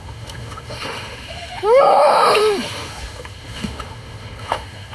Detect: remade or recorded remade